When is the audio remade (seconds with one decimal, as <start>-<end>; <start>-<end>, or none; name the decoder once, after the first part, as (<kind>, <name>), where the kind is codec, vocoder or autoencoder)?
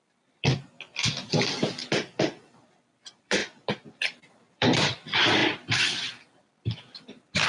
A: 0.0-0.5 (vocoder, BigVGAN v2); 1.3-7.5